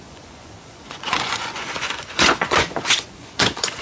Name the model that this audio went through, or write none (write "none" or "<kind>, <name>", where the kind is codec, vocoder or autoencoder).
vocoder, Vocos